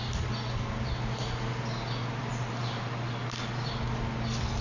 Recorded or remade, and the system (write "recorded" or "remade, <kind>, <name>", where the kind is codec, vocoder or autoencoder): recorded